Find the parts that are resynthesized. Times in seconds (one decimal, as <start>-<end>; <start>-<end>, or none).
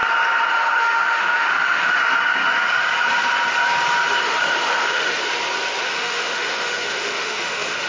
0.5-2.0; 4.2-5.2; 5.8-7.9